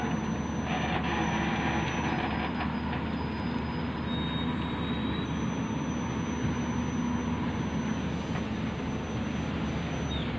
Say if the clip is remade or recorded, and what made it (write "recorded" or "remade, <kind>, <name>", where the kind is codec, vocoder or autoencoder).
recorded